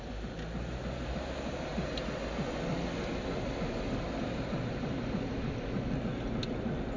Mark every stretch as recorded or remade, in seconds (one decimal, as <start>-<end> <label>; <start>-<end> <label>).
0.0-7.0 recorded